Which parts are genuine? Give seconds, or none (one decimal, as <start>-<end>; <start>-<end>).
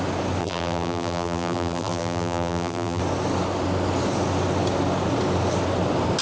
0.0-0.4; 3.0-6.2